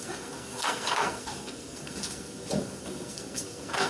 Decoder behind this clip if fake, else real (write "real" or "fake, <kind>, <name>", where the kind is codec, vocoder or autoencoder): fake, codec, SNAC